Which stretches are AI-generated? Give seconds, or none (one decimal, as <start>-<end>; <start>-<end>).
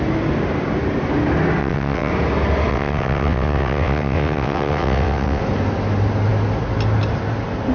1.6-2.1; 2.7-5.4